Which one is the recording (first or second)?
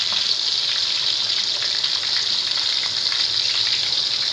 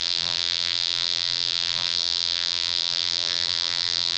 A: first